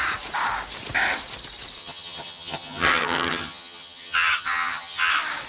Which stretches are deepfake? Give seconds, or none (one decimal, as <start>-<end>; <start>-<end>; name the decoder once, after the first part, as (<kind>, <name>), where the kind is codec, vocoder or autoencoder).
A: 1.8-5.1 (vocoder, HiFi-GAN)